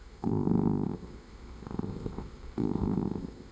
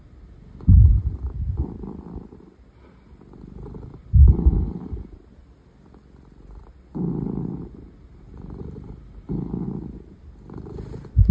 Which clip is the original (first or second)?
second